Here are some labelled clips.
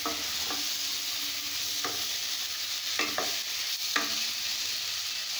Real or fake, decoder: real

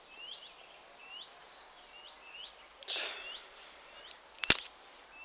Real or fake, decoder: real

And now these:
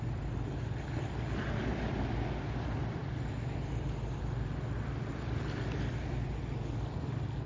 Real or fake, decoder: real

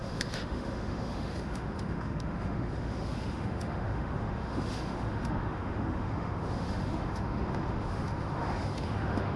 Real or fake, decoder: fake, autoencoder, DAC-VAE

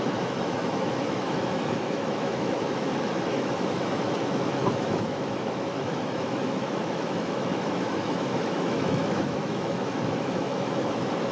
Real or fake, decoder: fake, autoencoder, DAC-VAE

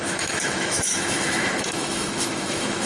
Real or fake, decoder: fake, autoencoder, DAC-VAE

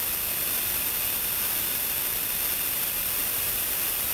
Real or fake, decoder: real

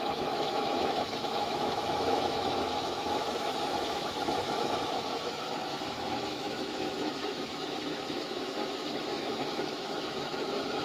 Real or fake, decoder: fake, autoencoder, DAC-VAE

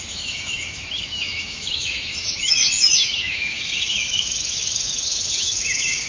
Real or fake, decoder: fake, autoencoder, DAC-VAE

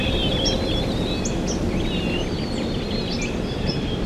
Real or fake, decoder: real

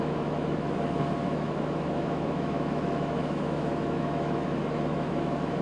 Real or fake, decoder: fake, autoencoder, DAC-VAE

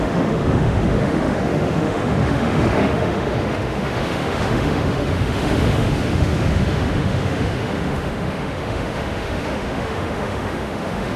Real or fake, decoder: fake, autoencoder, DAC-VAE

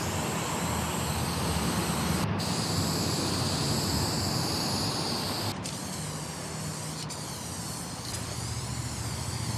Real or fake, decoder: real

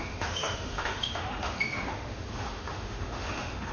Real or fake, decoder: fake, autoencoder, DAC-VAE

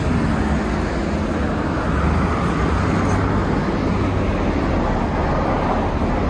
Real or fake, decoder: real